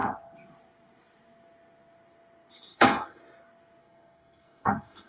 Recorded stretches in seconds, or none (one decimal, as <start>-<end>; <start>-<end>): 0.0-2.7; 3.2-3.8